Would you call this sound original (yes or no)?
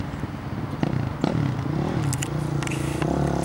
yes